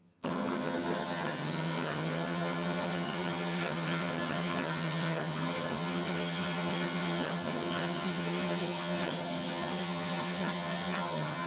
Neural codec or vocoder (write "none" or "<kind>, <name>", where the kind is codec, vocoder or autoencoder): vocoder, HiFi-GAN